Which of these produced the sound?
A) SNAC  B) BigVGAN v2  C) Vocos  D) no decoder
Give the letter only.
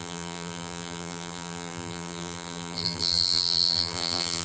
B